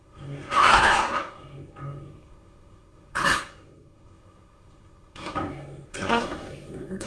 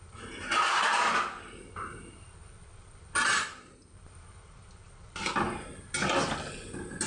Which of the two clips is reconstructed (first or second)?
first